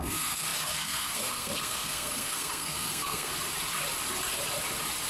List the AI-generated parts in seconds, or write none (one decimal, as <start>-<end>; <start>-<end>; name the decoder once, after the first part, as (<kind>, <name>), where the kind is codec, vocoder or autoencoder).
0.0-3.3 (codec, SNAC)